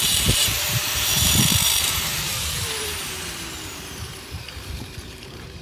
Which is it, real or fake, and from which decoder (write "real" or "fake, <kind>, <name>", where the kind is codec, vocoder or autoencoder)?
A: fake, vocoder, BigVGAN v2